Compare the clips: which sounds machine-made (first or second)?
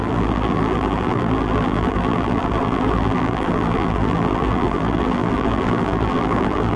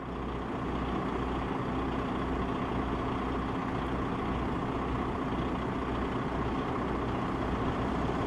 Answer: first